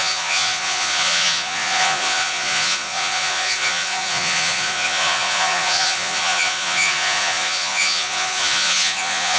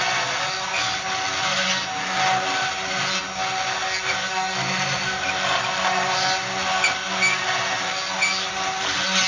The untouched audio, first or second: second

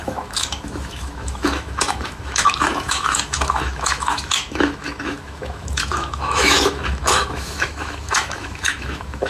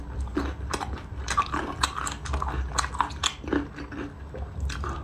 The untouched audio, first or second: second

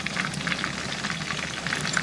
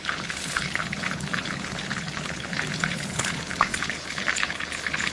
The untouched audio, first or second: first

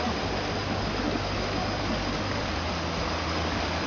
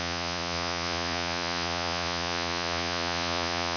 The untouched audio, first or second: first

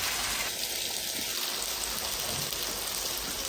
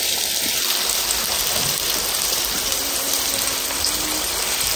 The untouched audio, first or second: first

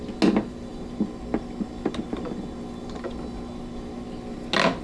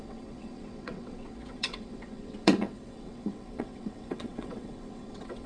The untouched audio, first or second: first